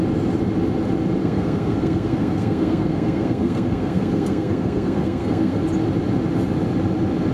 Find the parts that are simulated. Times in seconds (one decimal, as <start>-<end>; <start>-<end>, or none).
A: 1.2-5.6